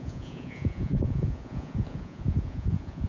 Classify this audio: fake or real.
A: fake